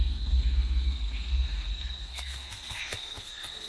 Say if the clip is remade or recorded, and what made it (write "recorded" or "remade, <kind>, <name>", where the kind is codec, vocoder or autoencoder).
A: remade, codec, SNAC